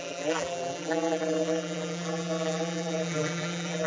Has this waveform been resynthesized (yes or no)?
yes